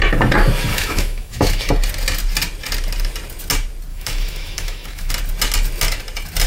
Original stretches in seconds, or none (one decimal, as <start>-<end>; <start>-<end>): 0.0-0.7; 1.7-3.9; 5.1-6.5